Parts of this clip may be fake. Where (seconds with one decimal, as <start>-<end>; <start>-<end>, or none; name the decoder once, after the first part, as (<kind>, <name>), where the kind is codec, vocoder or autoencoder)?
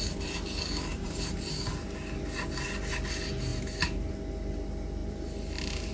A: 0.9-1.5 (vocoder, BigVGAN v2); 3.5-4.1; 5.0-5.9